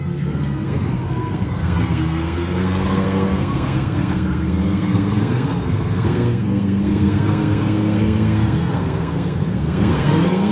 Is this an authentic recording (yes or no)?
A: no